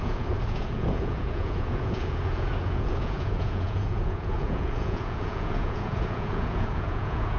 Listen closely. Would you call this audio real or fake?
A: fake